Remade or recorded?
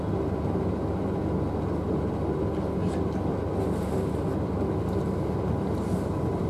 recorded